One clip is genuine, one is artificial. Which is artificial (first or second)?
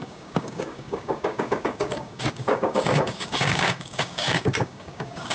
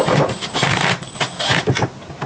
first